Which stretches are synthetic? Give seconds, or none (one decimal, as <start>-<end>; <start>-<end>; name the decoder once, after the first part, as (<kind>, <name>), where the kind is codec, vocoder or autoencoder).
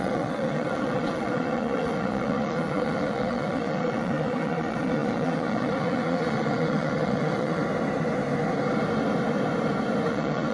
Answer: 0.0-7.6 (vocoder, Vocos); 10.1-10.5